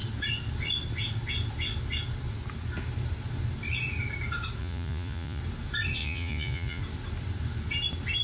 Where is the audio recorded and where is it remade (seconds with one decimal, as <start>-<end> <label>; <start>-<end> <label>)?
0.0-4.6 recorded; 4.6-5.4 remade; 5.4-6.0 recorded; 6.0-6.8 remade; 6.8-8.2 recorded